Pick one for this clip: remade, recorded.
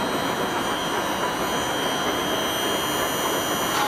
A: recorded